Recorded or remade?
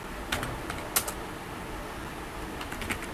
recorded